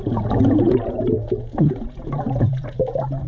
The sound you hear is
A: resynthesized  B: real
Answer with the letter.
A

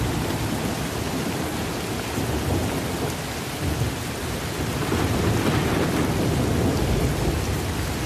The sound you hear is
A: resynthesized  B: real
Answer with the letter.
B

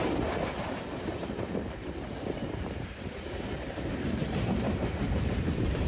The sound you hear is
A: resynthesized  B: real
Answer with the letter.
A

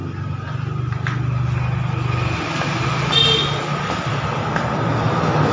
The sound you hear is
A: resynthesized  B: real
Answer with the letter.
B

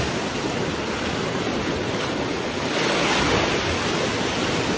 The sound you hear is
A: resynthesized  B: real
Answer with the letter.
B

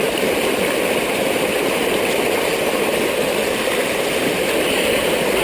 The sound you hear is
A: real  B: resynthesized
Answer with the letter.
A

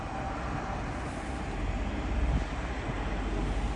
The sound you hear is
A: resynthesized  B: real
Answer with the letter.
B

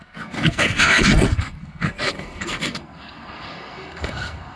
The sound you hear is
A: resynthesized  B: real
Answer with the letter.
A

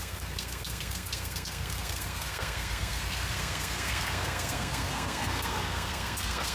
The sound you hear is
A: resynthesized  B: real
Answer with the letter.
A